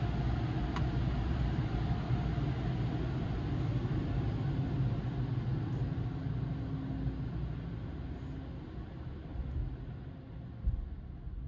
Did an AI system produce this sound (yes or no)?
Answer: no